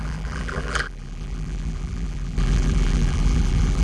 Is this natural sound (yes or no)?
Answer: no